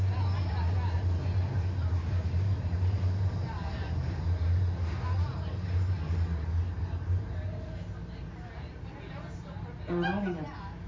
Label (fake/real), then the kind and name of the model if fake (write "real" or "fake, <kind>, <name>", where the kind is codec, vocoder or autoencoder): real